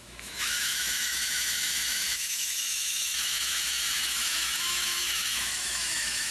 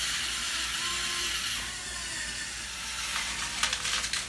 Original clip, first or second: second